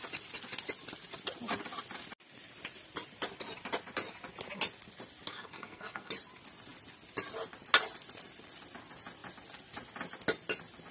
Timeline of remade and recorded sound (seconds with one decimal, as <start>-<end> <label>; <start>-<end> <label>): 0.0-5.3 recorded; 5.3-6.1 remade; 6.1-10.9 recorded